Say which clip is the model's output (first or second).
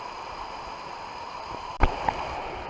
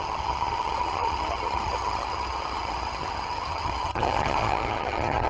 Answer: second